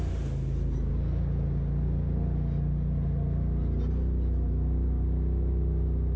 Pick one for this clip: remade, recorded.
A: recorded